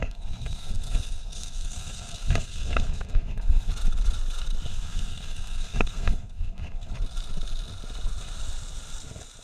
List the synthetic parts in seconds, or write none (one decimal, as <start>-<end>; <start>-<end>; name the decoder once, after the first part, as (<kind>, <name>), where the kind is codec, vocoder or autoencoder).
0.0-3.7 (codec, SNAC); 4.7-6.9

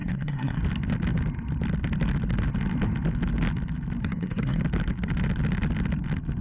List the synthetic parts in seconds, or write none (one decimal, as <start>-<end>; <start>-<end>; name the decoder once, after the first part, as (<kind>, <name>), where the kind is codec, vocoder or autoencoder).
0.0-0.6 (codec, SNAC); 4.0-4.6

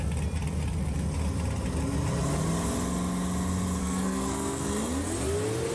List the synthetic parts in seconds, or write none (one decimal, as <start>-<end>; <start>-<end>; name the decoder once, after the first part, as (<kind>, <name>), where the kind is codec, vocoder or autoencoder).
3.8-4.7 (codec, SNAC)

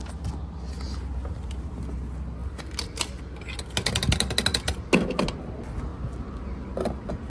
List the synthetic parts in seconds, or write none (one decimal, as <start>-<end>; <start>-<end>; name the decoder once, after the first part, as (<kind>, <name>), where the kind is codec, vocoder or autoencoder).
none

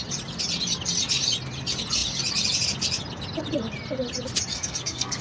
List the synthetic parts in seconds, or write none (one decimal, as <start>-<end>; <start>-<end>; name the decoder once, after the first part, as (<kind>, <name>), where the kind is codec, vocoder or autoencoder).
4.5-5.2 (codec, SNAC)

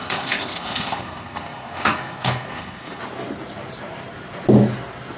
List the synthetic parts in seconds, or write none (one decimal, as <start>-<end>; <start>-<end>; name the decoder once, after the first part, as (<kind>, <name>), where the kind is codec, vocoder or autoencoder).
0.0-3.0 (codec, SNAC)